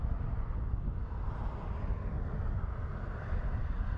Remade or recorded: recorded